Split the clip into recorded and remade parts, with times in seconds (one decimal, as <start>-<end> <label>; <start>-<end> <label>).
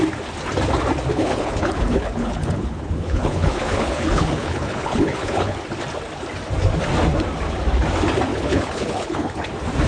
0.0-1.1 recorded; 1.1-5.6 remade; 5.6-8.3 recorded; 8.3-9.5 remade; 9.5-9.9 recorded